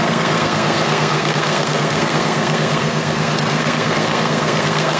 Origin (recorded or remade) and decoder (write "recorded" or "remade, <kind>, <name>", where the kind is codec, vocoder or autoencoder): remade, codec, SNAC